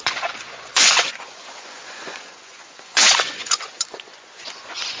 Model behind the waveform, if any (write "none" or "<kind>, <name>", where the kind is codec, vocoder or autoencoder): vocoder, Vocos